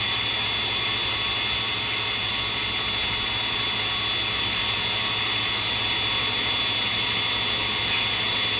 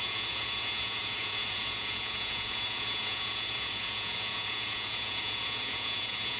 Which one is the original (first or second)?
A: first